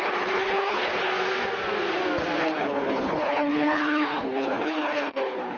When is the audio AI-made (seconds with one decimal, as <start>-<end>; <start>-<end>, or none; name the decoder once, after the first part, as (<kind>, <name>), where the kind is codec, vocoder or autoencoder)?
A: 0.0-1.1 (codec, HILCodec); 2.4-5.6